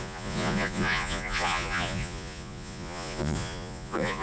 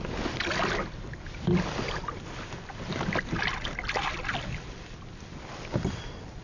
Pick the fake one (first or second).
first